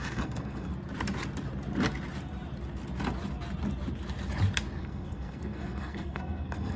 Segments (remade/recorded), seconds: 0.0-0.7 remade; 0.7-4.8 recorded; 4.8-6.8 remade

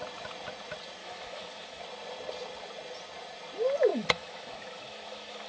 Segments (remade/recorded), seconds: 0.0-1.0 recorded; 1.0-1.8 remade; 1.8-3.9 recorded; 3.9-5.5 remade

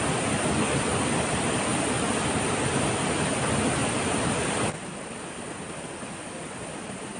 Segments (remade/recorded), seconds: 0.0-3.8 recorded; 3.8-5.5 remade; 5.5-7.2 recorded